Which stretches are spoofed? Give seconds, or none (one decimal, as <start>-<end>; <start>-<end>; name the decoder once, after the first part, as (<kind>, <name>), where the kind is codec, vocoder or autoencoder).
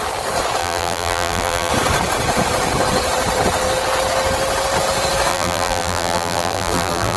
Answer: 0.6-1.7 (vocoder, BigVGAN v2); 5.3-7.2